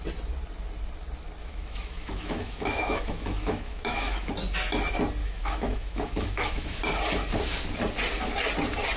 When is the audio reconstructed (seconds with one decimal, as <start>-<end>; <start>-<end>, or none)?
1.4-4.3; 5.2-6.8